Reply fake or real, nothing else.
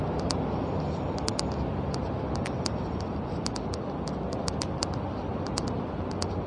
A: real